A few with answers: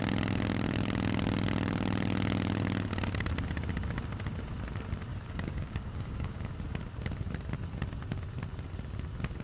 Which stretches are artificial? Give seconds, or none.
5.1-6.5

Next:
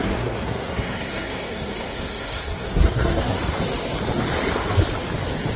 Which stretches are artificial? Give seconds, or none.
0.0-3.4

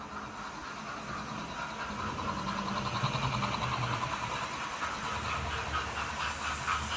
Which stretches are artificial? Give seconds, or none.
none

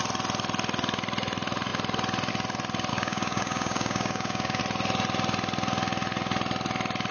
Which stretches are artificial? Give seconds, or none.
2.9-4.6

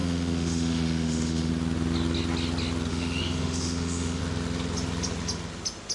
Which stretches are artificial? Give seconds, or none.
0.0-1.5; 2.9-4.2

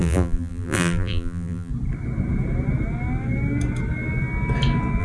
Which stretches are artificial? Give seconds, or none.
0.0-1.7

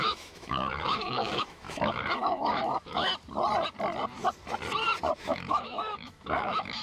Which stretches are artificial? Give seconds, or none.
0.0-3.1; 5.2-6.8

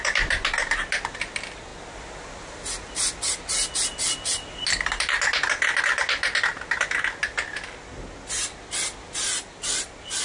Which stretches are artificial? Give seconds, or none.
none